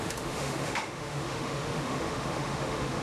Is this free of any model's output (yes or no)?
no